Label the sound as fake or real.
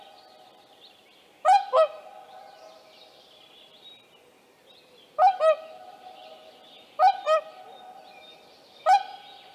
real